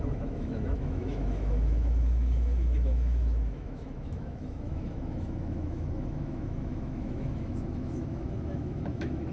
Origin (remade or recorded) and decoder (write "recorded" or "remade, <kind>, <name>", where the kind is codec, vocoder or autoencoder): remade, autoencoder, DAC-VAE